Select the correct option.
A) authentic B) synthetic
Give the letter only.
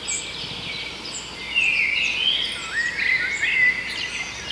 A